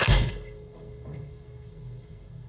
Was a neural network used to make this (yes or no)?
yes